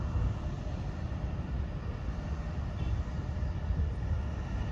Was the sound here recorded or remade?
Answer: remade